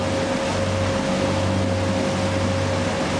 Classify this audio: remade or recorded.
recorded